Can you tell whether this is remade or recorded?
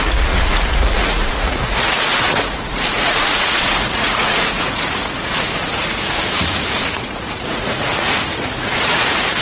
remade